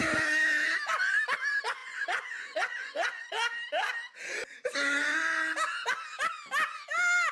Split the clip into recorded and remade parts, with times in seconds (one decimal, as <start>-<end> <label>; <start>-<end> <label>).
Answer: 0.0-1.8 recorded; 1.8-3.3 remade; 3.3-7.3 recorded